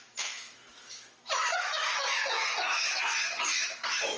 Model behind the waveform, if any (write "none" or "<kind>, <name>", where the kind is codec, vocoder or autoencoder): autoencoder, DAC-VAE